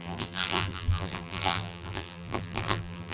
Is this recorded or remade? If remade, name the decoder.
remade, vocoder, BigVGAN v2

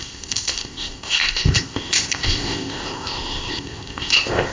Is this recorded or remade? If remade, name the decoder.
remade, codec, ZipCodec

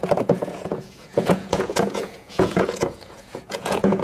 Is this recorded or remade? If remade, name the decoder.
remade, vocoder, Vocos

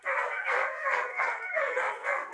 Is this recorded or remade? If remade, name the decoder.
remade, codec, SNAC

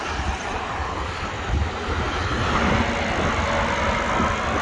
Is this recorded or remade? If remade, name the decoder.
recorded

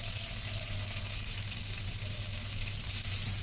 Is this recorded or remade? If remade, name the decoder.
recorded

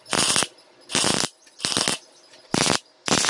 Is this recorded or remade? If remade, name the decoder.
recorded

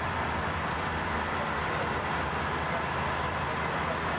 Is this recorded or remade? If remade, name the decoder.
recorded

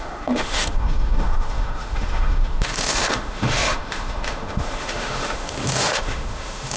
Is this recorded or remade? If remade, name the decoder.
remade, autoencoder, DAC-VAE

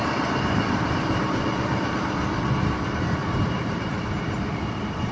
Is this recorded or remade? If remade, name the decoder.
remade, vocoder, BigVGAN v2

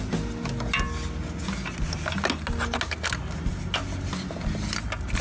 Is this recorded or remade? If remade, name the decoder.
recorded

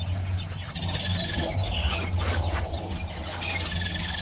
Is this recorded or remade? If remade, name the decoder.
recorded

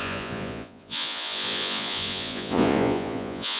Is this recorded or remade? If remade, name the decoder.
remade, vocoder, Vocos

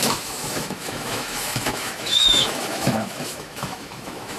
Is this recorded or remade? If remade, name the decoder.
remade, autoencoder, DAC-VAE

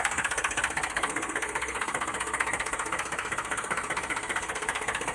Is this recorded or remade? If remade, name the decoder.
remade, codec, SNAC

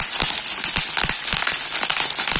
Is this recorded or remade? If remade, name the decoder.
recorded